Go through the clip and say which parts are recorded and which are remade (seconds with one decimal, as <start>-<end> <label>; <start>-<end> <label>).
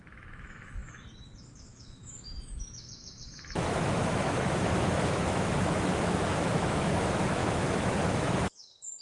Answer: 0.0-9.0 remade